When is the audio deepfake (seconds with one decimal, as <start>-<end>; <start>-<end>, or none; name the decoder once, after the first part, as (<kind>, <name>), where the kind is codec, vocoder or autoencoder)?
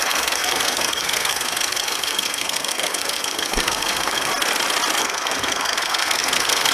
0.0-4.3 (codec, SNAC); 5.0-6.7